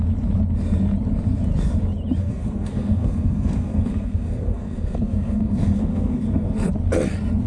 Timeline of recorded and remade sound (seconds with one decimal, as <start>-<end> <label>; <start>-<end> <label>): 0.0-2.2 recorded; 2.2-6.7 remade; 6.7-7.5 recorded